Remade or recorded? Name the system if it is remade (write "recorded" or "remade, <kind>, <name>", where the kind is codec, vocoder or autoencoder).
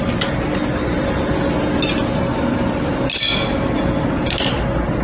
recorded